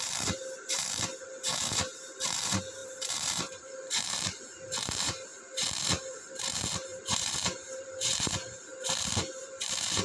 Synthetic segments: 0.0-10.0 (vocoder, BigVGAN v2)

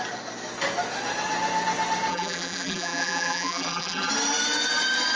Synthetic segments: 2.1-4.1 (vocoder, BigVGAN v2)

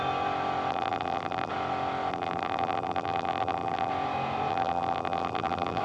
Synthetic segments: 0.7-1.5 (vocoder, BigVGAN v2); 2.1-3.9; 4.5-5.8